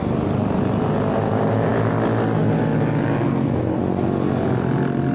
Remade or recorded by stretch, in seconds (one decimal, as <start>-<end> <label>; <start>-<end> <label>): 0.0-3.2 recorded; 3.2-3.8 remade; 3.8-5.1 recorded